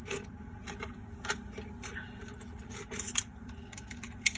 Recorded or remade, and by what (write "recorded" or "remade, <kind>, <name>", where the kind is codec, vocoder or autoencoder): recorded